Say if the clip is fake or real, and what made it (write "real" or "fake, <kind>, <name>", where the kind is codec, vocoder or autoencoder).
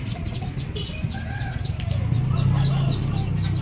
real